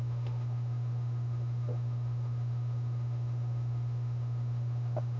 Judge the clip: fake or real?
fake